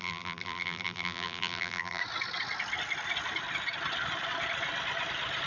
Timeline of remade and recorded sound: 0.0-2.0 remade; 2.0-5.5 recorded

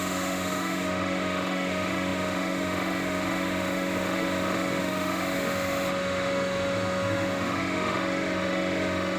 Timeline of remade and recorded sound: 0.0-9.2 remade

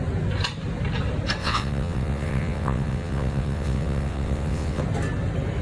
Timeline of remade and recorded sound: 0.0-1.4 recorded; 1.4-4.8 remade; 4.8-5.6 recorded

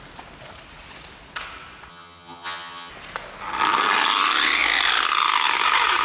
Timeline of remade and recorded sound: 0.0-1.9 recorded; 1.9-2.9 remade; 2.9-6.0 recorded

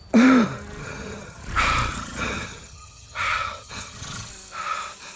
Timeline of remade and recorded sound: 0.0-0.8 recorded; 0.8-1.4 remade; 1.4-1.9 recorded; 1.9-4.3 remade; 4.3-5.2 recorded

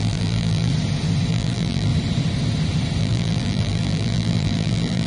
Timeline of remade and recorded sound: 0.0-0.7 remade; 0.7-1.3 recorded; 1.3-1.9 remade; 1.9-3.0 recorded; 3.0-5.1 remade

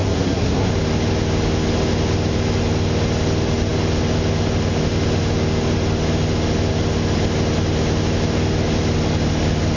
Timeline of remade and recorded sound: 0.0-0.7 remade; 0.7-9.8 recorded

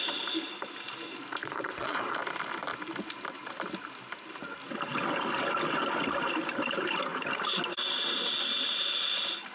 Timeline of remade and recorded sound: 0.0-1.4 recorded; 1.4-2.1 remade; 2.1-9.5 recorded